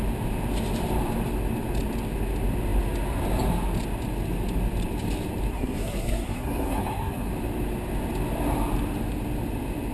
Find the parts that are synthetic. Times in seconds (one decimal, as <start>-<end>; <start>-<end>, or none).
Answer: 5.5-7.3